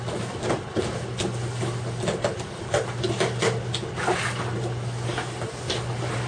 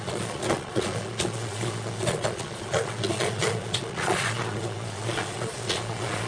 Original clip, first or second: first